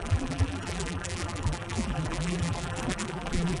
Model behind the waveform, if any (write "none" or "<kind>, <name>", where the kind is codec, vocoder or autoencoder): vocoder, BigVGAN v2